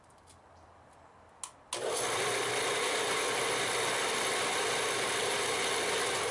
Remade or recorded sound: recorded